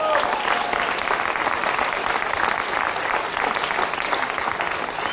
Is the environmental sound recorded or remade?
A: recorded